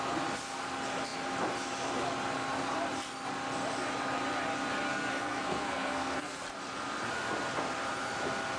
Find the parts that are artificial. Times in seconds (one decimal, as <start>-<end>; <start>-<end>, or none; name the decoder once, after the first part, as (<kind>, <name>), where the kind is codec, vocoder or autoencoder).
4.9-6.4 (codec, SNAC)